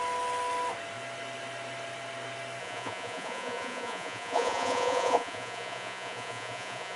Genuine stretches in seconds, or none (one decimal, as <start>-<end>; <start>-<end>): 0.0-2.6